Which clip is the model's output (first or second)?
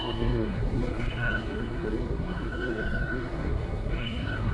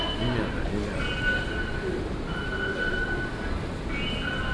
first